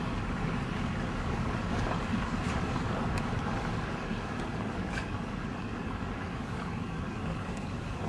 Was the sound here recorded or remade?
remade